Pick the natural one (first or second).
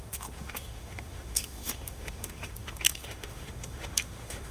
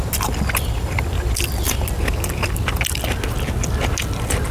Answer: second